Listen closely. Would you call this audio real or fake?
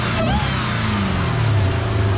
real